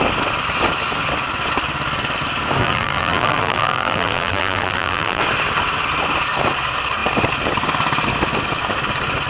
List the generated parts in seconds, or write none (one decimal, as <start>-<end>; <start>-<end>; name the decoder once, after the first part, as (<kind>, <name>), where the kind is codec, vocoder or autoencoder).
2.6-5.2 (vocoder, BigVGAN v2)